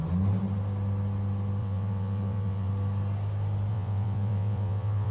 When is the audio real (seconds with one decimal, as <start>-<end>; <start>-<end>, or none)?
0.0-1.6; 2.7-3.7